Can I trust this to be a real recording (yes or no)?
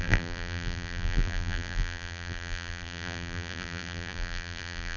no